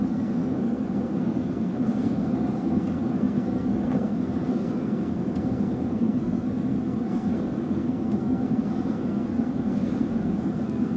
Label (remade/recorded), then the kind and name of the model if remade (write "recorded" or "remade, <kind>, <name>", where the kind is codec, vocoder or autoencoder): remade, codec, SNAC